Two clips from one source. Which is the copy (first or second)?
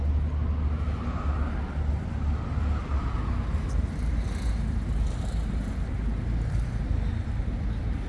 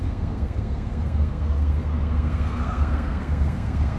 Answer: second